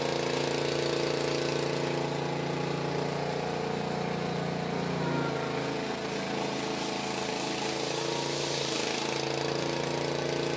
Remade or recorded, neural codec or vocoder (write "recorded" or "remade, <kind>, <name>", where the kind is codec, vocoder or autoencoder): recorded